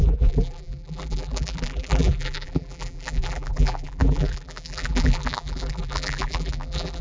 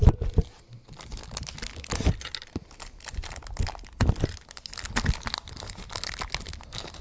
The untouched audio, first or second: second